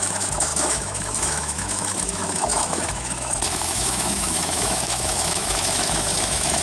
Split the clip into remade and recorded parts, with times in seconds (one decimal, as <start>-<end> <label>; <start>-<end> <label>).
0.0-6.6 remade